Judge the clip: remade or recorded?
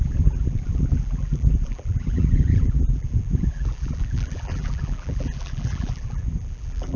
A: remade